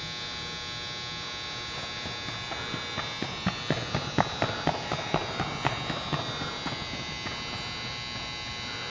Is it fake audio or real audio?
real